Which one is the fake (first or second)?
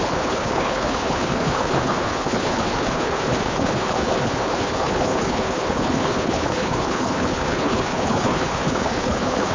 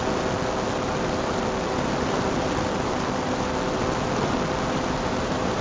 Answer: first